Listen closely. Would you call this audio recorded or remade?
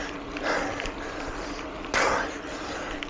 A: recorded